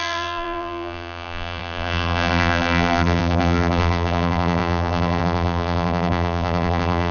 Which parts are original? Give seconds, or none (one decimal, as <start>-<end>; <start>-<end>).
none